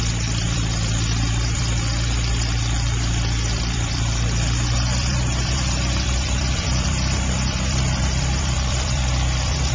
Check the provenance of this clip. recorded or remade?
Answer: remade